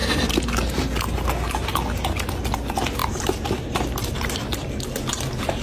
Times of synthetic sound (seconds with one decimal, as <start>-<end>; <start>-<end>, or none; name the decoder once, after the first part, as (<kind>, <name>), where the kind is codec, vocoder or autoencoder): 3.0-3.8 (vocoder, BigVGAN v2)